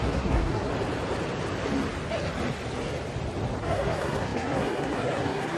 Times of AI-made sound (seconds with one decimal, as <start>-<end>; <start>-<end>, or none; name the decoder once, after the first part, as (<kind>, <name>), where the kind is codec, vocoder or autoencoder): 0.0-0.7 (codec, SNAC); 3.6-5.6